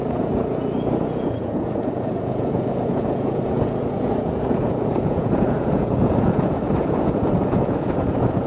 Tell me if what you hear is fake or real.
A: fake